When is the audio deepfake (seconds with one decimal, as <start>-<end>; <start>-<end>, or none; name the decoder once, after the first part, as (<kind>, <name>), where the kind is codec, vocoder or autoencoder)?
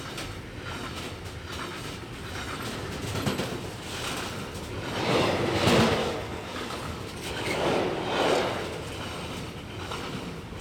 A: 6.0-7.8 (codec, DAC)